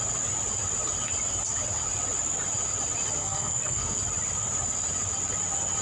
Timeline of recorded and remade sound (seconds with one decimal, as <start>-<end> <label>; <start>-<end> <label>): 0.0-3.2 recorded; 3.2-4.0 remade; 4.0-5.8 recorded

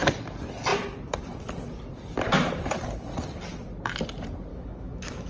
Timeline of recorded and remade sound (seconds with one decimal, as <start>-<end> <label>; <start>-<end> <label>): 0.0-4.5 recorded; 4.5-5.3 remade

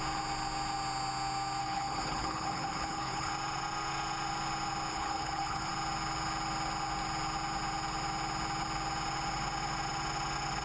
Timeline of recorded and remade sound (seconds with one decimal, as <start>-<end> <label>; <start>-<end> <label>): 0.0-1.6 recorded; 1.6-3.3 remade; 3.3-4.9 recorded; 4.9-5.7 remade; 5.7-10.6 recorded

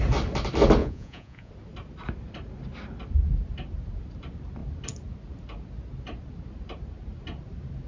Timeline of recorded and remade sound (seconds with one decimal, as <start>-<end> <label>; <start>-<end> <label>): 0.0-0.8 recorded; 0.8-1.5 remade; 1.5-7.9 recorded

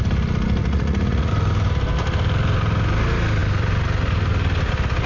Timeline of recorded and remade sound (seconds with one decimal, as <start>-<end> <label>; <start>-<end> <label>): 0.0-0.6 recorded; 0.6-1.3 remade; 1.3-5.1 recorded